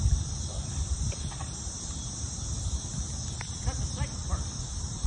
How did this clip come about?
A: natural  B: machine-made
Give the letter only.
B